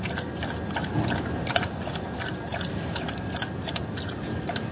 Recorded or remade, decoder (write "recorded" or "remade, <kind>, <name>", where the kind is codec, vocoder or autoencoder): remade, vocoder, BigVGAN v2